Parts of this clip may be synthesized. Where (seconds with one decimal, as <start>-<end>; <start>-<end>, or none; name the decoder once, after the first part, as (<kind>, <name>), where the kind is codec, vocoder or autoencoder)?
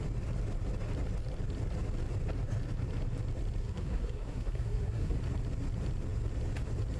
3.6-5.2 (codec, SNAC)